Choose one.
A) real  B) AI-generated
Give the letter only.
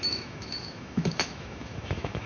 B